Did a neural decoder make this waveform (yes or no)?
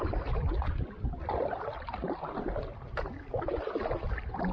no